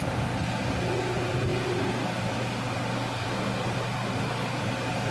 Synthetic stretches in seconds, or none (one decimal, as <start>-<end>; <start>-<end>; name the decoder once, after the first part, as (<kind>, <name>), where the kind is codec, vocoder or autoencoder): none